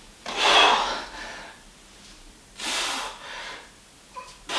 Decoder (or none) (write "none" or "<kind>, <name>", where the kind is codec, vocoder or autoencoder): none